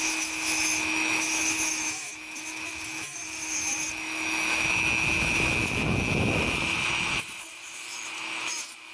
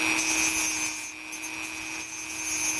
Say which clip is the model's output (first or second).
first